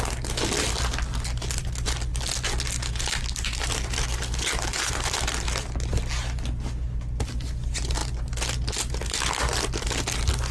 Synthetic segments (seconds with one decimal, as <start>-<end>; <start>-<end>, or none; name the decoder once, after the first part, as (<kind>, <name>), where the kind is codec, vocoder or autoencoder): none